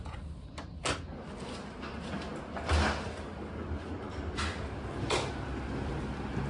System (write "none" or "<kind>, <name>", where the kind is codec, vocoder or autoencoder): none